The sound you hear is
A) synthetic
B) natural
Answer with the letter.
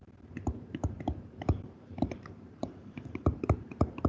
A